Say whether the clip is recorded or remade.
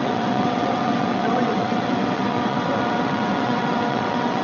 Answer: remade